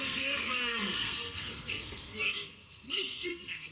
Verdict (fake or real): fake